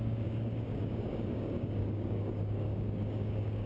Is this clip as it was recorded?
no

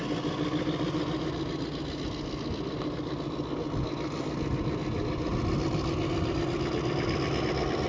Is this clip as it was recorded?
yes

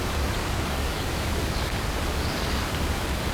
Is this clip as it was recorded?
no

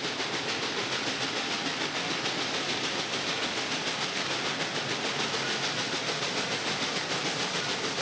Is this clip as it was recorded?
yes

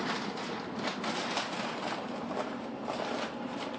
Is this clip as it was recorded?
yes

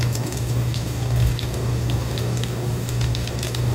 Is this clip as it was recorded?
no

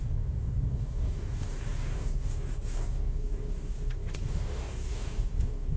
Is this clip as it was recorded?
no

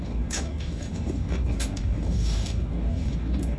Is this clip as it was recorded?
no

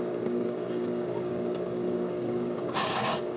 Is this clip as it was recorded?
no